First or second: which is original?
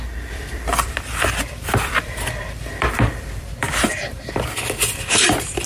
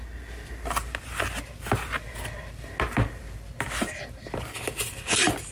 second